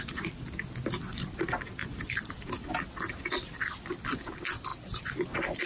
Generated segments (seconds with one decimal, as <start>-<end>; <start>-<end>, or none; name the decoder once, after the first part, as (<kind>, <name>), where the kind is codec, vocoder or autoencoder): 1.8-2.4 (vocoder, BigVGAN v2)